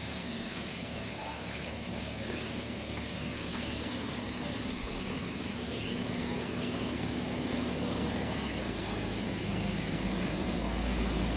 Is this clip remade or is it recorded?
remade